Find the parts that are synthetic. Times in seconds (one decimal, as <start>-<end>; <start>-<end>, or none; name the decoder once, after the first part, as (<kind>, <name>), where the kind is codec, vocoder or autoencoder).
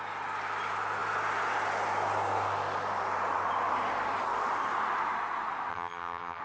5.7-6.4 (vocoder, HiFi-GAN)